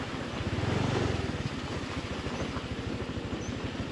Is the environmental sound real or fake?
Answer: real